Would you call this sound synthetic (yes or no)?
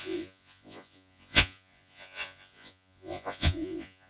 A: yes